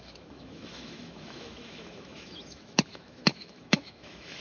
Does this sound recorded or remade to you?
remade